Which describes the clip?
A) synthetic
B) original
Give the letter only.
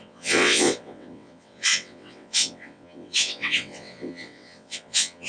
A